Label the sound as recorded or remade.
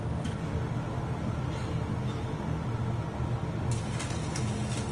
recorded